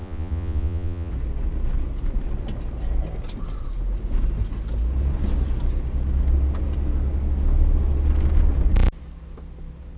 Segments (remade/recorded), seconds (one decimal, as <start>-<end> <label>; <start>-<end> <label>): 0.0-1.1 remade; 1.1-10.0 recorded